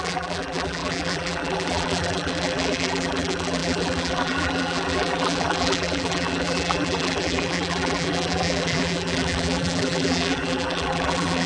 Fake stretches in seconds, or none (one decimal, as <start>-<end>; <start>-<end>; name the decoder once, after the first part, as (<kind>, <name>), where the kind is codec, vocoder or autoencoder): 0.0-11.5 (vocoder, BigVGAN v2)